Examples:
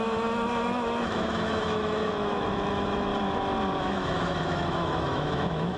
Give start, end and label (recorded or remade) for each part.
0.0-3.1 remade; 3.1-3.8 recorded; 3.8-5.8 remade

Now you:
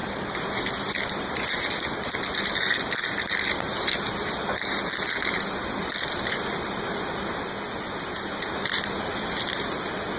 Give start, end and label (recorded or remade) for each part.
0.0-10.2 recorded

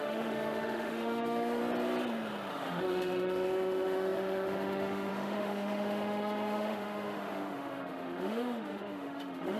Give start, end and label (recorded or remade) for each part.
0.0-1.6 remade; 1.6-2.5 recorded; 2.5-9.6 remade

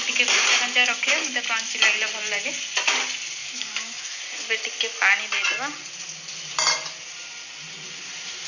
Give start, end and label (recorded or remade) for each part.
0.0-3.4 recorded; 3.4-4.2 remade; 4.2-8.5 recorded

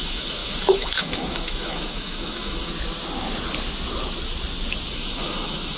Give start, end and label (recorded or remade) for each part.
0.0-2.7 remade; 2.7-4.9 recorded; 4.9-5.8 remade

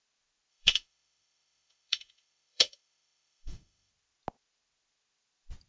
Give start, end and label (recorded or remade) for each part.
0.0-0.5 recorded; 0.5-3.9 remade; 3.9-5.7 recorded

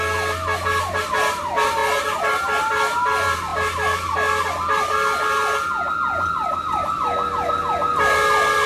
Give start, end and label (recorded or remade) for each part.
0.0-8.7 recorded